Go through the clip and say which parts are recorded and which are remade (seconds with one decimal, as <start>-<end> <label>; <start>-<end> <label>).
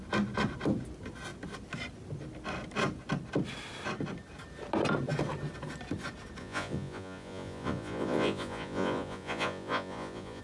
0.0-6.4 recorded; 6.4-10.4 remade